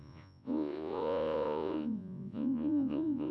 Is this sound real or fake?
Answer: fake